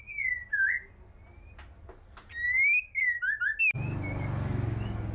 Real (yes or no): yes